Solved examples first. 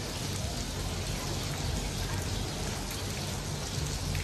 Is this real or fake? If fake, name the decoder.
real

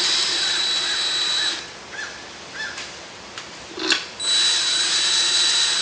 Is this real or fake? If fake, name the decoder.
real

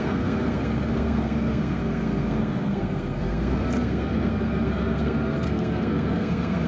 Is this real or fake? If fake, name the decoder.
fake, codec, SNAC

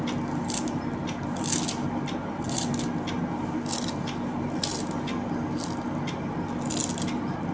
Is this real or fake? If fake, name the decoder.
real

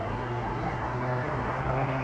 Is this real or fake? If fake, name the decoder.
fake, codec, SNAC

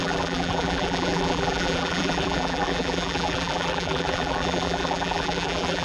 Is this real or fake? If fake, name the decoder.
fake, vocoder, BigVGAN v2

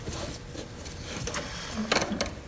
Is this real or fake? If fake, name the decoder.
real